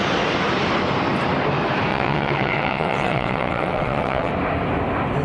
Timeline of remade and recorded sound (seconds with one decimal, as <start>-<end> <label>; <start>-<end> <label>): 0.0-1.9 recorded; 1.9-4.3 remade; 4.3-5.2 recorded